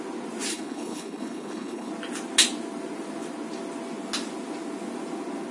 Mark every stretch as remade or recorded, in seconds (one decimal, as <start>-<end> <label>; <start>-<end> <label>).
0.0-0.5 recorded; 0.5-1.9 remade; 1.9-5.5 recorded